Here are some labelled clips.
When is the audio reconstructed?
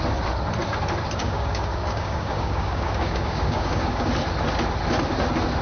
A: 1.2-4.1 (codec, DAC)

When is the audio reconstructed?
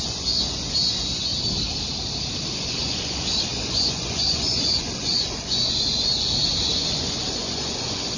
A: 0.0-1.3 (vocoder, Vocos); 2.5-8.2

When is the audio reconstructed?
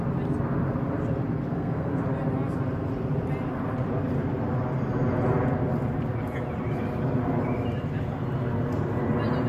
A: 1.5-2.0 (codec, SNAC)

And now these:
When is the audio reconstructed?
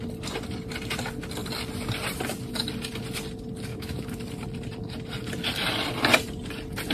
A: 3.7-4.2 (autoencoder, DAC-VAE)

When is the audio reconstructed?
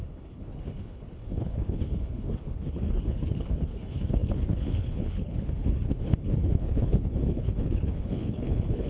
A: 0.0-8.9 (codec, HILCodec)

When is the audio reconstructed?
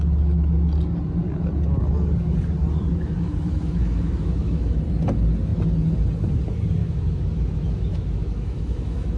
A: 2.9-4.8 (autoencoder, DAC-VAE); 6.8-9.2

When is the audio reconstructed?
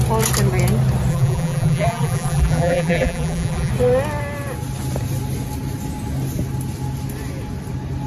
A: 1.1-3.7 (vocoder, BigVGAN v2)